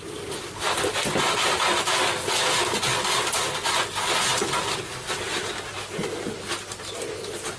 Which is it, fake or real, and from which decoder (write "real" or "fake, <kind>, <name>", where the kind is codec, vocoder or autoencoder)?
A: real